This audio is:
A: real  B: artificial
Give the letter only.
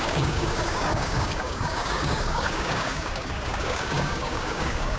B